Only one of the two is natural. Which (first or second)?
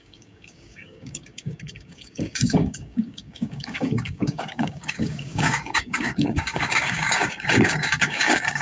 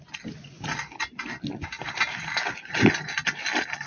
second